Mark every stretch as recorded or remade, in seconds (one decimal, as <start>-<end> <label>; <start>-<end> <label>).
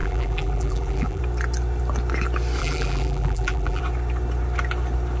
0.0-1.2 remade; 1.2-2.6 recorded; 2.6-3.8 remade; 3.8-5.2 recorded